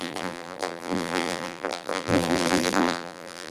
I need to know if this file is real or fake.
fake